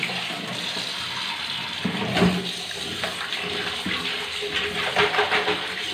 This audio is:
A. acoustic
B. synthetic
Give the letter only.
A